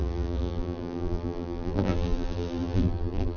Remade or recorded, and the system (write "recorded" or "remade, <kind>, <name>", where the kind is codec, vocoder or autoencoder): remade, vocoder, BigVGAN v2